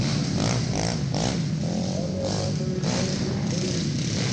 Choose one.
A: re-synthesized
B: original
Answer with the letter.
B